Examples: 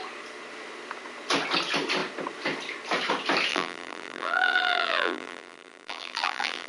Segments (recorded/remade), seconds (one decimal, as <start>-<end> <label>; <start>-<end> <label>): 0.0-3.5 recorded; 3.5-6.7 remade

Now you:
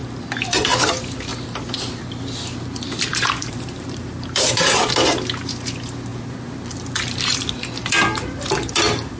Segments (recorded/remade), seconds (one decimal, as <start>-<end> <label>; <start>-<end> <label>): 0.0-1.3 recorded; 1.3-2.0 remade; 2.0-3.1 recorded; 3.1-4.8 remade; 4.8-9.2 recorded

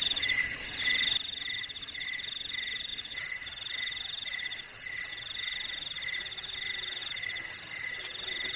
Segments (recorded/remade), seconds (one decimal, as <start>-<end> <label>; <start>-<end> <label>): 0.0-2.9 recorded; 2.9-3.9 remade; 3.9-7.0 recorded; 7.0-7.8 remade; 7.8-8.6 recorded

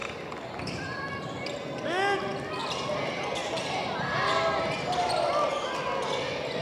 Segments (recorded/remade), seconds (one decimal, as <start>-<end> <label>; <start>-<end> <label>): 0.0-2.3 recorded; 2.3-3.0 remade; 3.0-3.4 recorded; 3.4-4.1 remade; 4.1-6.6 recorded

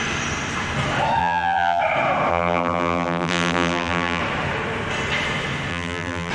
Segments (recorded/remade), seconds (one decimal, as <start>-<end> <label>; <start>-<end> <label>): 0.0-1.2 recorded; 1.2-1.8 remade; 1.8-2.3 recorded; 2.3-4.2 remade; 4.2-5.7 recorded; 5.7-6.3 remade